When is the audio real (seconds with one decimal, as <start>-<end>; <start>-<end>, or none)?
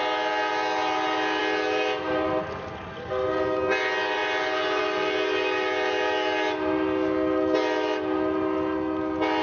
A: 0.0-9.4